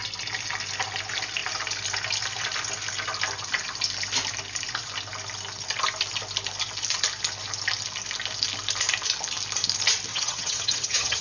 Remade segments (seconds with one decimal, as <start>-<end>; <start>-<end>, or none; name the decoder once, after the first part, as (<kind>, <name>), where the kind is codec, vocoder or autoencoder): 10.1-11.2 (vocoder, HiFi-GAN)